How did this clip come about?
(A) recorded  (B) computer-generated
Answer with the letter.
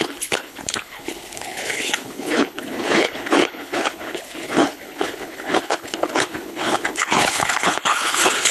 B